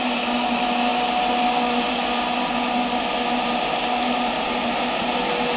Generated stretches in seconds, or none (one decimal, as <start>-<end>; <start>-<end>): none